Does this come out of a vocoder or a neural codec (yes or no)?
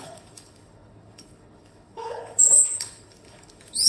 yes